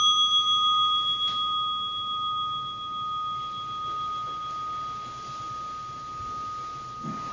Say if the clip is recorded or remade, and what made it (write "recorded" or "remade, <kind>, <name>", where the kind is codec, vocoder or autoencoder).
recorded